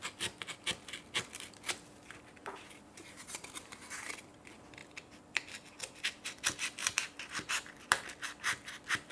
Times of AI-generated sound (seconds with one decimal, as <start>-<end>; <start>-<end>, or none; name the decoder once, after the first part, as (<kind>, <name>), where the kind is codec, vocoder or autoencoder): 2.4-3.8 (vocoder, BigVGAN v2); 6.8-7.8